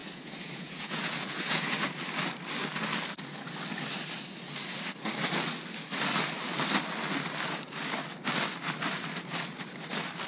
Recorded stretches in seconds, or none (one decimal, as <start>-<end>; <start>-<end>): 2.0-10.3